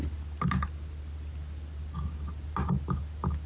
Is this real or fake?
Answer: real